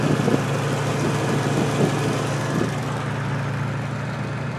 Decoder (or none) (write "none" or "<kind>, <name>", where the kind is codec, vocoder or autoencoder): none